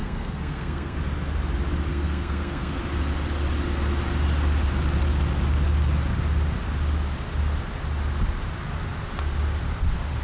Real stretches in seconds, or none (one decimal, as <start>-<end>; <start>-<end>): 1.0-1.9; 2.8-10.2